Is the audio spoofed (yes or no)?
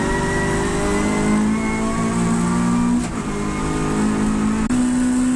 no